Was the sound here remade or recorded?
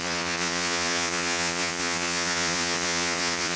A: remade